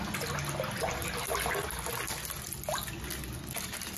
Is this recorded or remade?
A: recorded